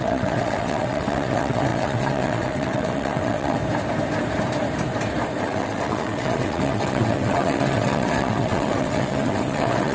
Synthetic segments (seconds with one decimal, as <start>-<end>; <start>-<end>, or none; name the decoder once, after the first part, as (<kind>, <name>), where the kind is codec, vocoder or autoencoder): 0.0-3.6 (vocoder, WaveNeXt); 5.4-9.9